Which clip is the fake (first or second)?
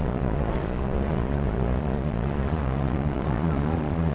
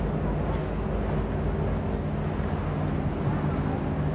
first